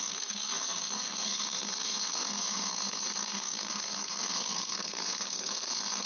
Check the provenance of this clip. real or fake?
fake